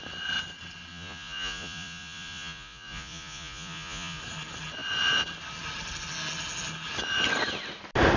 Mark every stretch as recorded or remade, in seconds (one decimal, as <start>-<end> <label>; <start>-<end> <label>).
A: 0.0-0.9 recorded; 0.9-4.2 remade; 4.2-8.2 recorded